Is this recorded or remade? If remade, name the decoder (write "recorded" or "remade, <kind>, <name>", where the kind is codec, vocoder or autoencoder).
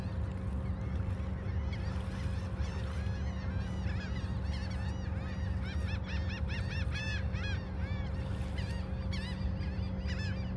recorded